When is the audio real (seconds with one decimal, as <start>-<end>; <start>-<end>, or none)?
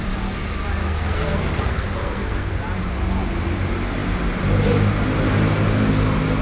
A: 0.0-0.8; 2.6-6.4